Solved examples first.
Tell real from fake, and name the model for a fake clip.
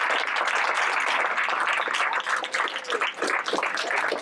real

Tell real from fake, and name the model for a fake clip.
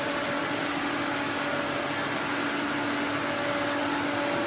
real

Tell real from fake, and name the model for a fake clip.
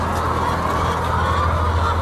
real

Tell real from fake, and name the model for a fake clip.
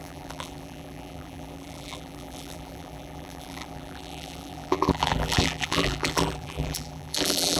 fake, vocoder, BigVGAN v2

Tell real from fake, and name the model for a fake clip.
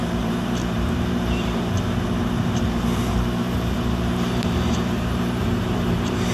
fake, vocoder, BigVGAN v2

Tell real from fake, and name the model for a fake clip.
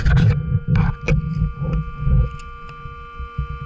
real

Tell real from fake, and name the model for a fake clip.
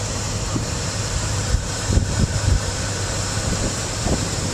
fake, vocoder, BigVGAN v2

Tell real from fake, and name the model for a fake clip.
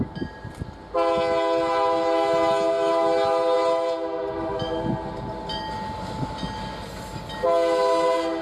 real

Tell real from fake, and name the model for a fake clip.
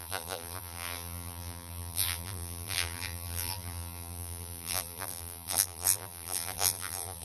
fake, vocoder, BigVGAN v2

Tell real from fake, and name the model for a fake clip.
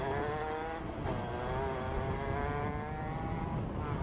real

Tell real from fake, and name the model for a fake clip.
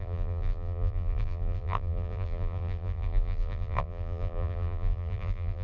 fake, vocoder, BigVGAN v2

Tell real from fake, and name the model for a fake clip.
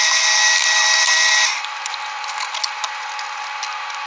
real